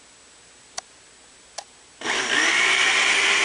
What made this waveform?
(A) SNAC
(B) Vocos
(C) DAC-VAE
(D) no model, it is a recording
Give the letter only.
D